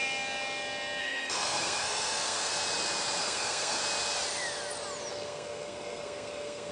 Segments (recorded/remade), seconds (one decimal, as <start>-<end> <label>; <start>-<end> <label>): 0.0-1.0 recorded; 1.0-2.5 remade; 2.5-3.2 recorded; 3.2-3.8 remade; 3.8-5.1 recorded; 5.1-6.7 remade